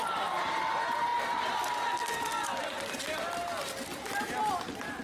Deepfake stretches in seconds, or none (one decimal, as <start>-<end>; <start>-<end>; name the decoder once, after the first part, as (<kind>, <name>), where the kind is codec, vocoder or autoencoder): none